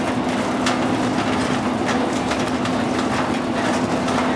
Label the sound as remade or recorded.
recorded